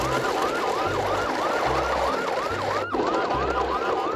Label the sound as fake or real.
real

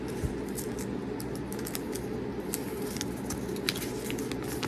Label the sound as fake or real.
real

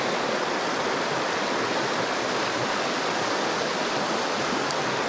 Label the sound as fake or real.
real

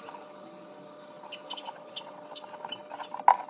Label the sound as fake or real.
real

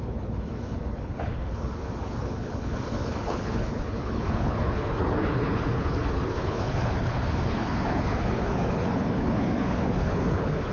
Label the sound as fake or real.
fake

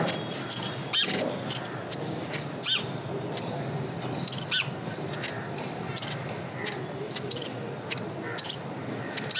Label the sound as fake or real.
real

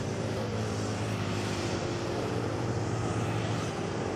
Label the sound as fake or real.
fake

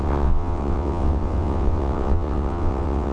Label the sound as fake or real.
fake